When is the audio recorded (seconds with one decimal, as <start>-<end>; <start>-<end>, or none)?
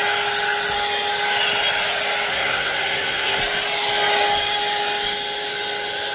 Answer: 0.0-2.3; 3.4-6.1